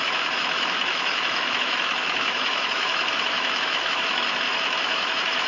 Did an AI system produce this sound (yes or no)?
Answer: yes